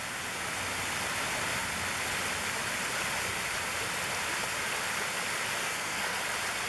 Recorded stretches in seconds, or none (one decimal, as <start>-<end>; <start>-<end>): 0.0-5.6; 6.2-6.7